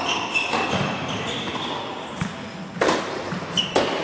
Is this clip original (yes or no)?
yes